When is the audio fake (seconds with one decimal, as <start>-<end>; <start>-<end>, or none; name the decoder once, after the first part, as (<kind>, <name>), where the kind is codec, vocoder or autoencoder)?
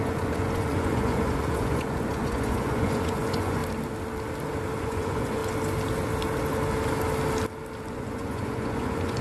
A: 0.0-3.6 (vocoder, Vocos); 4.8-5.4; 7.9-9.2